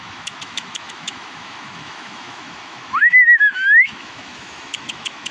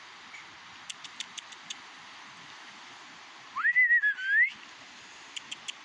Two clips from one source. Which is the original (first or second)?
second